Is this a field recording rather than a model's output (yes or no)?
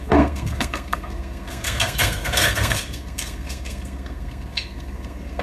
no